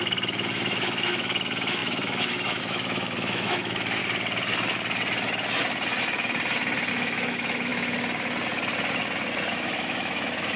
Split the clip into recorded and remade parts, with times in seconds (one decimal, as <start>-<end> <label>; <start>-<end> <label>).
0.0-4.0 remade; 4.0-6.9 recorded; 6.9-7.7 remade; 7.7-9.5 recorded; 9.5-10.6 remade